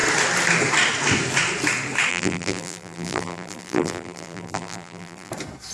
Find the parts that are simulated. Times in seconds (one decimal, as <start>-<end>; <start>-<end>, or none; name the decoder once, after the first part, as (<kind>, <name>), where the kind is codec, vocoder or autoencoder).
2.1-5.3 (vocoder, BigVGAN v2)